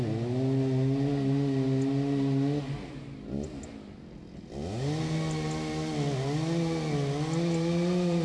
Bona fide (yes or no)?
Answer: yes